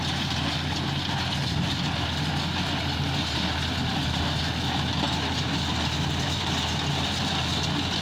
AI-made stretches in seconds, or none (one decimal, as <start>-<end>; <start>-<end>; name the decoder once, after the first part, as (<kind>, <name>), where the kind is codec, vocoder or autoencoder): none